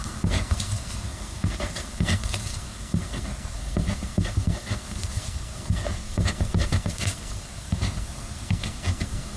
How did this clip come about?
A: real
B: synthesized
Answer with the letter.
B